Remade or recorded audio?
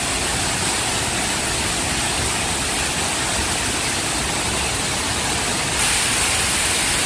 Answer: recorded